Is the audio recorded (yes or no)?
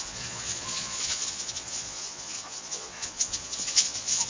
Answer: no